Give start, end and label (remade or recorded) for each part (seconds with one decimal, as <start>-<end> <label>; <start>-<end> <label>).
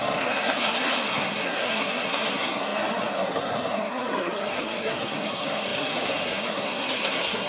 0.0-7.5 remade